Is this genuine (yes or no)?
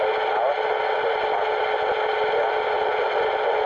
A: yes